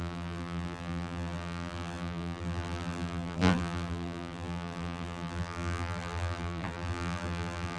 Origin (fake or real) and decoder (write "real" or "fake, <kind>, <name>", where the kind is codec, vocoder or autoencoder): fake, vocoder, BigVGAN v2